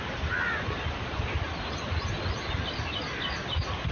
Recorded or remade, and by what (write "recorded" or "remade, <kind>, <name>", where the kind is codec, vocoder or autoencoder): recorded